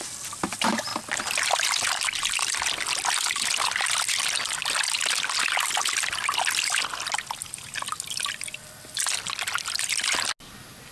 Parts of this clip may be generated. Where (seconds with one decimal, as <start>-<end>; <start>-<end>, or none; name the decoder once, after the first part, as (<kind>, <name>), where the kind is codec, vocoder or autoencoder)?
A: none